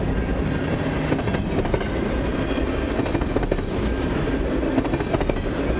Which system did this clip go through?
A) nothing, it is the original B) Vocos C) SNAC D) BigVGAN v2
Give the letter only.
A